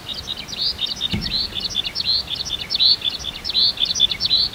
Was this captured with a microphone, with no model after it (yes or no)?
yes